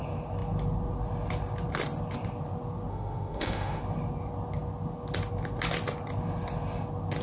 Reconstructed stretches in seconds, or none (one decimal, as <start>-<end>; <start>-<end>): 2.9-3.8